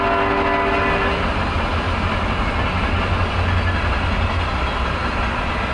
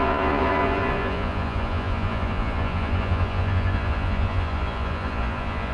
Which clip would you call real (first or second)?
first